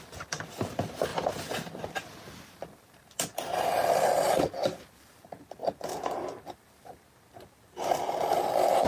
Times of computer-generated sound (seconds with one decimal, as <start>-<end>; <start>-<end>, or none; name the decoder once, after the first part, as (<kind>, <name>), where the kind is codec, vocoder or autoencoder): 0.0-5.6 (vocoder, BigVGAN v2); 6.1-8.9